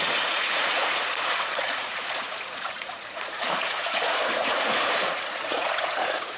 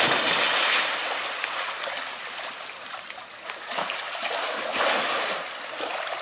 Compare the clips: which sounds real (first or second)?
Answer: second